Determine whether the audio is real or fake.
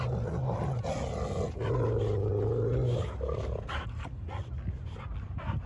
real